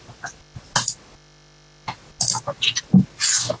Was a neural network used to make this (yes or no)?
no